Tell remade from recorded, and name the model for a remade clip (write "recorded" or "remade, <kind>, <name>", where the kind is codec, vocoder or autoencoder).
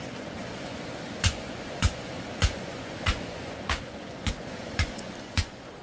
remade, vocoder, Vocos